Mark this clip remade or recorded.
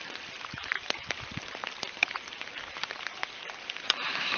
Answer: remade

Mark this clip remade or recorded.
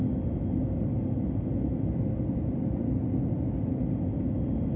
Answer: recorded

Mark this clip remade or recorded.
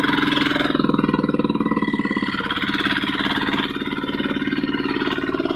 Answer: recorded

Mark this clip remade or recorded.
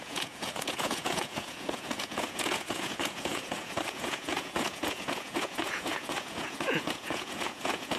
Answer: remade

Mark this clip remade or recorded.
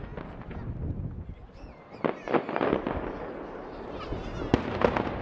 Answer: recorded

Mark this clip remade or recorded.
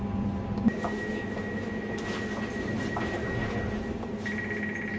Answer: recorded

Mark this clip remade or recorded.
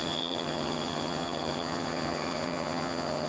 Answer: remade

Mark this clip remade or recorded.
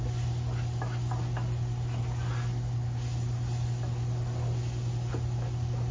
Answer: recorded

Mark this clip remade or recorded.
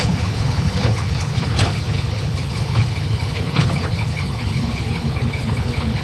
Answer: remade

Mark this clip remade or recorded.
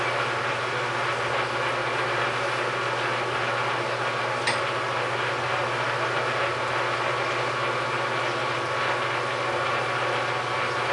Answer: recorded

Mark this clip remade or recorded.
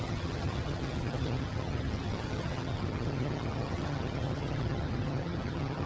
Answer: remade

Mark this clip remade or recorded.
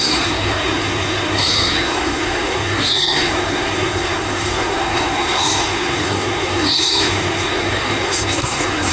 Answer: remade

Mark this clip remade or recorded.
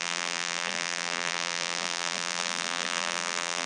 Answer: remade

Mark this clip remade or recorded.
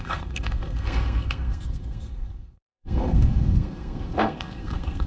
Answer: remade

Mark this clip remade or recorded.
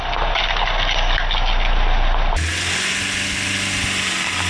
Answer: recorded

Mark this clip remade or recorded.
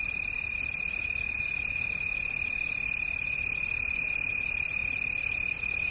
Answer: remade